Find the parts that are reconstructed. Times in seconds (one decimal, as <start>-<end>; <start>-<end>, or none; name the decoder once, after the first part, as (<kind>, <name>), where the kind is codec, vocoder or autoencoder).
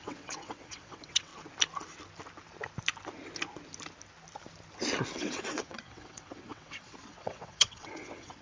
0.0-1.3 (vocoder, WaveNeXt); 5.1-8.4